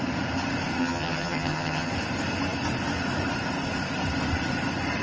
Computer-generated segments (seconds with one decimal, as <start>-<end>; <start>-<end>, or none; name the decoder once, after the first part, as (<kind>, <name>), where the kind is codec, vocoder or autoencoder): 0.8-1.9 (vocoder, HiFi-GAN)